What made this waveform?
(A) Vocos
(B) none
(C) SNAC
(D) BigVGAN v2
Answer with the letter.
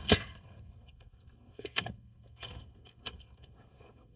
C